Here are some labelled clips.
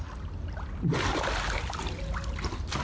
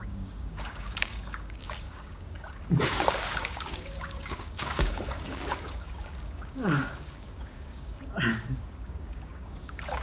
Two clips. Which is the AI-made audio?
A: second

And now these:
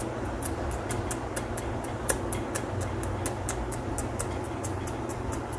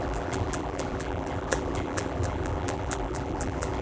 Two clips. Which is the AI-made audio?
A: second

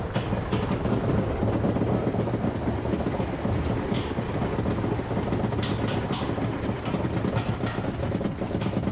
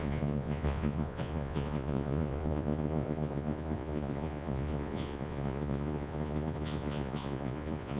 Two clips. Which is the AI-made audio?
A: second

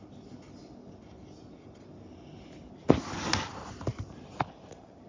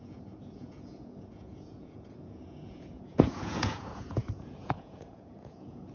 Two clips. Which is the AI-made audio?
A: second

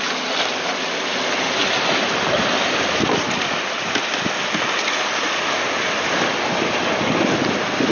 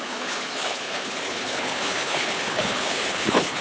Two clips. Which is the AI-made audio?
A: second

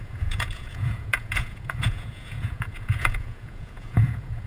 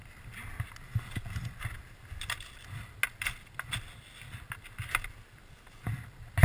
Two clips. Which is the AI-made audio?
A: first